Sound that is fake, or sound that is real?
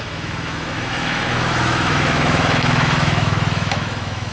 fake